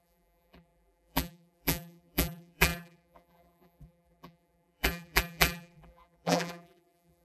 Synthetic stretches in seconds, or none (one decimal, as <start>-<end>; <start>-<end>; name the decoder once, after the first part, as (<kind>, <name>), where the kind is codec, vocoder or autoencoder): 0.0-7.2 (vocoder, BigVGAN v2)